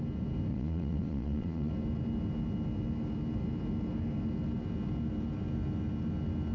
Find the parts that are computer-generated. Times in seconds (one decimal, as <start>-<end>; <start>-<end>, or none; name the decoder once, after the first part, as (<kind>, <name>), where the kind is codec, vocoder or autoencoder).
0.5-1.7 (vocoder, Vocos)